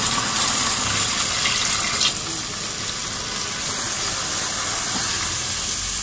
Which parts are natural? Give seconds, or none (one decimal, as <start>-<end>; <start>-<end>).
0.0-6.0